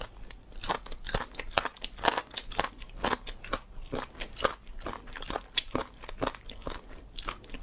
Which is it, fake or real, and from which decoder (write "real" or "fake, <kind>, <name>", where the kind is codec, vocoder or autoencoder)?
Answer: real